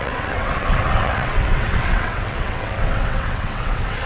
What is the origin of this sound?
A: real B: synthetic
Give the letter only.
B